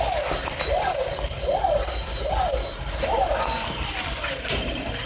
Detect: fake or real real